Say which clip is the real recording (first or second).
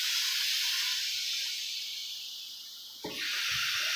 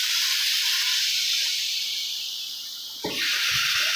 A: first